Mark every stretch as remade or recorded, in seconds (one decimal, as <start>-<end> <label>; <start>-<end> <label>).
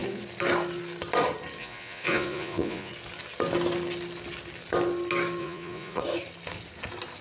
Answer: 0.0-1.6 recorded; 1.6-2.9 remade; 2.9-5.4 recorded; 5.4-6.0 remade; 6.0-7.2 recorded